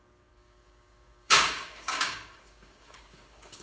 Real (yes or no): no